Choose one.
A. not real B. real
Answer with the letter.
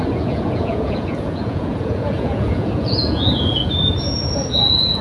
A